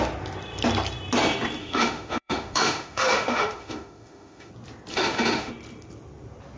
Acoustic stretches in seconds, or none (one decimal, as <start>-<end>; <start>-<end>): 0.0-1.6; 4.5-4.9; 5.5-6.6